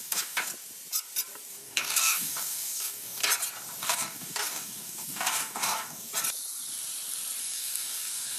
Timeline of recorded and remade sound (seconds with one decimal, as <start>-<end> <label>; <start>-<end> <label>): 0.0-0.5 remade; 0.5-1.5 recorded; 1.5-3.2 remade; 3.2-3.8 recorded; 3.8-6.1 remade; 6.1-7.4 recorded; 7.4-8.4 remade